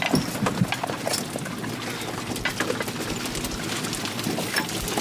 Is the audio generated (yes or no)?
no